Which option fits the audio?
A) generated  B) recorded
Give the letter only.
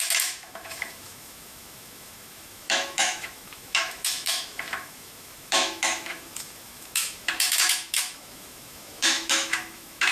A